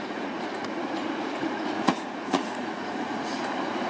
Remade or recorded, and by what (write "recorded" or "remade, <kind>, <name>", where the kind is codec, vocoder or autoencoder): remade, vocoder, Vocos